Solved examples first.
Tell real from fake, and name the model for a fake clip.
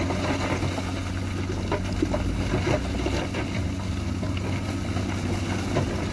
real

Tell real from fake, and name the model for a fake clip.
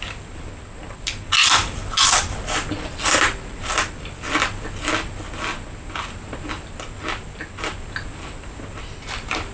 real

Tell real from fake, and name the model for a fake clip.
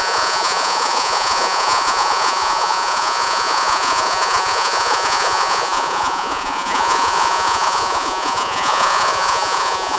fake, vocoder, Vocos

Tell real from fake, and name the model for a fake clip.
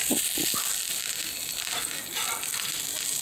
real